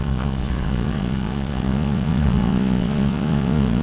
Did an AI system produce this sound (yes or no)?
yes